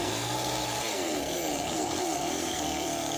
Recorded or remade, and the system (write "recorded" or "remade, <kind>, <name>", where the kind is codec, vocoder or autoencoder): remade, codec, SNAC